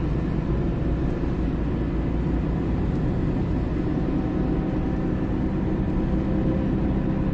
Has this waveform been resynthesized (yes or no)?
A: no